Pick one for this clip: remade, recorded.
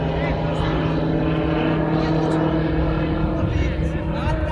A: recorded